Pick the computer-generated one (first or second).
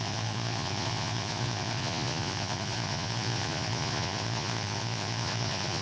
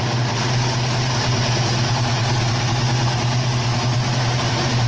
first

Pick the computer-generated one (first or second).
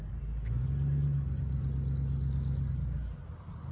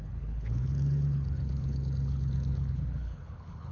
second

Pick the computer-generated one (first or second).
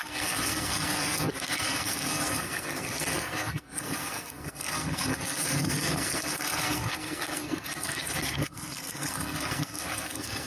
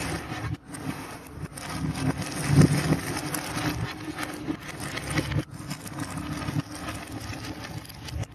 first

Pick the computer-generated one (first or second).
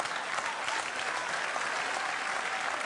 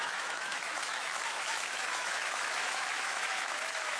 second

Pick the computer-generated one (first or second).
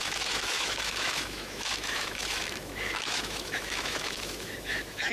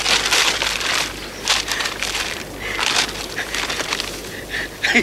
first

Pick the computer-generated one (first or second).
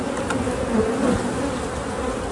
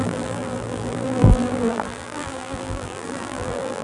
second